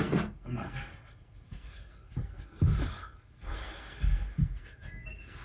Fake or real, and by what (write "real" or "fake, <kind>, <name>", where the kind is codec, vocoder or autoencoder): fake, codec, SNAC